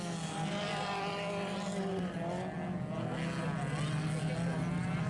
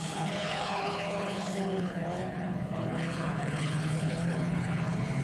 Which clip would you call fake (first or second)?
second